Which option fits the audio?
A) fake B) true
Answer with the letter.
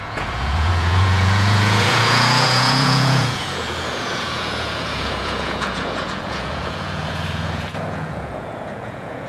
A